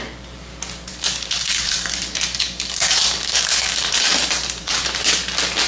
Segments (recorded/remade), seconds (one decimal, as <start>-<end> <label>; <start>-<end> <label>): 0.0-0.9 recorded; 0.9-3.9 remade; 3.9-4.6 recorded; 4.6-5.2 remade; 5.2-5.7 recorded

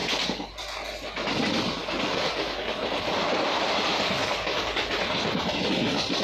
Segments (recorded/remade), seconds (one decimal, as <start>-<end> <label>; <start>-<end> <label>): 0.0-0.5 remade; 0.5-1.8 recorded; 1.8-2.8 remade; 2.8-4.2 recorded; 4.2-4.9 remade; 4.9-6.2 recorded

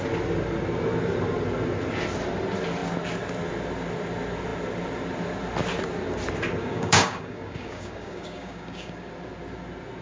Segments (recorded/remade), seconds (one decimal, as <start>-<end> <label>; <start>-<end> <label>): 0.0-6.6 recorded; 6.6-9.1 remade; 9.1-10.0 recorded

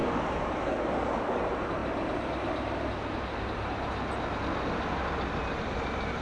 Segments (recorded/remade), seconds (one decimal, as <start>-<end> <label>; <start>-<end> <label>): 0.0-1.4 remade; 1.4-6.2 recorded

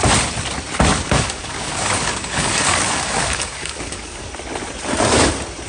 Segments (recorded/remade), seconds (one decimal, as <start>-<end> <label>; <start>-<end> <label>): 0.0-0.9 recorded; 0.9-4.3 remade; 4.3-5.7 recorded